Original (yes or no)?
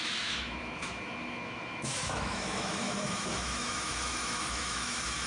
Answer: no